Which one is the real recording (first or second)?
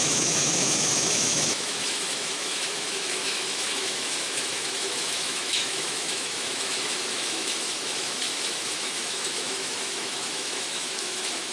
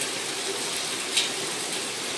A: second